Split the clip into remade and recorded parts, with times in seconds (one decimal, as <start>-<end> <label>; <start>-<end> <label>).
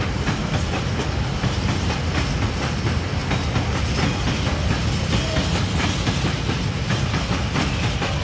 0.0-8.2 recorded